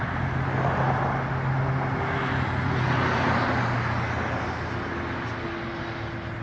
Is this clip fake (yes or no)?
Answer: no